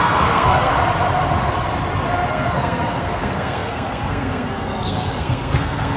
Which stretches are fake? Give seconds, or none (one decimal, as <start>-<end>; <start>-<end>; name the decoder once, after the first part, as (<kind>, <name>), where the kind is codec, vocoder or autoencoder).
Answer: 0.0-0.7 (codec, SNAC); 2.3-6.0